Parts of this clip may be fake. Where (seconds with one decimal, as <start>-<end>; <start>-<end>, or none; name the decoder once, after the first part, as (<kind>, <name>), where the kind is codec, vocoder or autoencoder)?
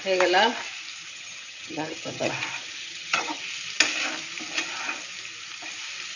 1.1-2.3 (vocoder, HiFi-GAN); 2.8-3.4